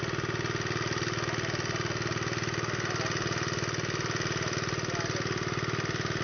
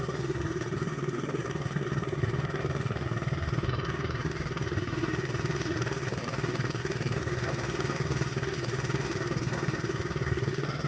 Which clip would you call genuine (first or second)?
first